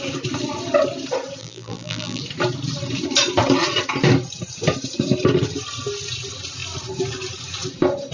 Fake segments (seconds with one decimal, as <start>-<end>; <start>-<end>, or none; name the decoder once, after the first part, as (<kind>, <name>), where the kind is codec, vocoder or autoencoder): 1.4-2.2 (vocoder, BigVGAN v2)